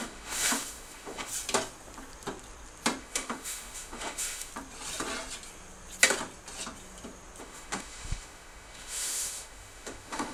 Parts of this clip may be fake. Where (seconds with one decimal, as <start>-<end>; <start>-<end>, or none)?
0.0-1.3; 3.0-4.5; 7.4-10.3